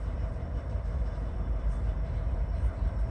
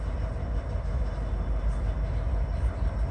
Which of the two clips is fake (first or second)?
first